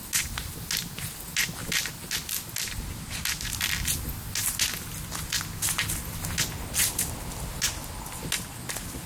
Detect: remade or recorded recorded